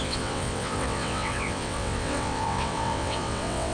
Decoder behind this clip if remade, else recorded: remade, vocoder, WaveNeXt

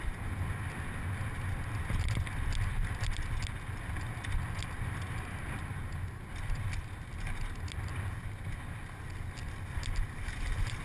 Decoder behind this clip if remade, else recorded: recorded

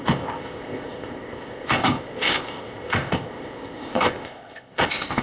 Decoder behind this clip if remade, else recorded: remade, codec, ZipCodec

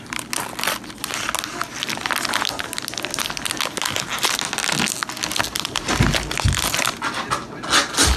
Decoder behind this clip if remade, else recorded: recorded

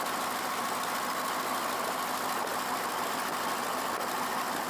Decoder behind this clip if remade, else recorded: recorded